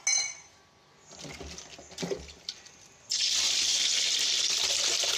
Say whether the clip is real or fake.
real